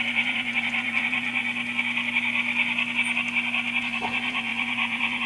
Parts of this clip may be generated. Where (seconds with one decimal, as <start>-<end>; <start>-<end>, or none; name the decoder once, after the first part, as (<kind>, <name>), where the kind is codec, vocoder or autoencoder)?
0.0-1.4 (vocoder, Vocos); 3.8-5.3